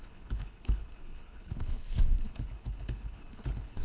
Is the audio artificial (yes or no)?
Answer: yes